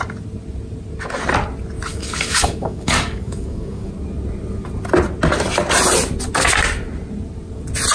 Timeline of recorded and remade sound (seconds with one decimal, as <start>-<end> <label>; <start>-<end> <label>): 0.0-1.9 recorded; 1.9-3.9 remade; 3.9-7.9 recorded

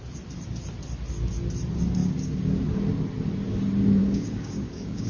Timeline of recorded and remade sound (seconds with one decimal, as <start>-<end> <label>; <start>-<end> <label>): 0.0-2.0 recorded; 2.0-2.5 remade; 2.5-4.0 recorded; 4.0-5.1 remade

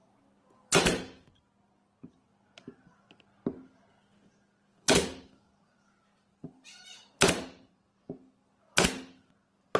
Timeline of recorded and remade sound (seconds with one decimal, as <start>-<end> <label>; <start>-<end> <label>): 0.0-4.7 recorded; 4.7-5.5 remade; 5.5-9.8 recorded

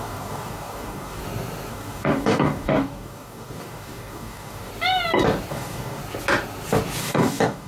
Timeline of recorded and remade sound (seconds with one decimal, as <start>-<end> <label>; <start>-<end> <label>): 0.0-1.2 remade; 1.2-1.7 recorded; 1.7-4.7 remade; 4.7-5.5 recorded; 5.5-6.0 remade; 6.0-7.0 recorded; 7.0-7.7 remade

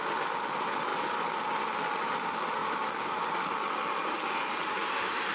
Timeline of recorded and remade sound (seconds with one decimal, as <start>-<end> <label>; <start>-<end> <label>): 0.0-5.3 recorded

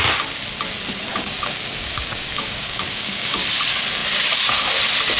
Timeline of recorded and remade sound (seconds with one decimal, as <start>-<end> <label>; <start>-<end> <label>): 0.0-1.1 recorded; 1.1-3.4 remade; 3.4-5.2 recorded

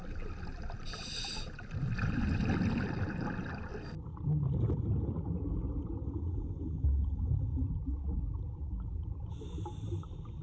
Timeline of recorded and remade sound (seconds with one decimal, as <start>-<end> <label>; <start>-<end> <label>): 0.0-10.4 recorded

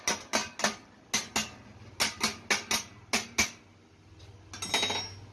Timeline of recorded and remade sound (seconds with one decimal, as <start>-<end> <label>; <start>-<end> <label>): 0.0-5.3 recorded